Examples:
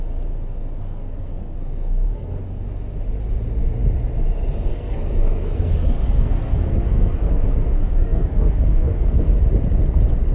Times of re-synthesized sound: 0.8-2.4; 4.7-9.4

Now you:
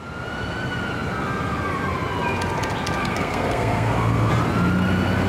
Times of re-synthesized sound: 3.0-4.3